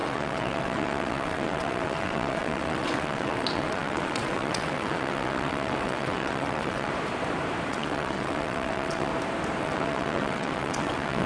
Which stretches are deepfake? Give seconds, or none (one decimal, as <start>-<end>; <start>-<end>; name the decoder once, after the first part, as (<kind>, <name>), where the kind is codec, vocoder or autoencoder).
0.0-6.9 (vocoder, WaveNeXt); 7.7-9.1; 9.6-11.3